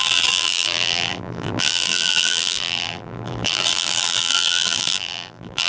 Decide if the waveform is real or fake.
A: fake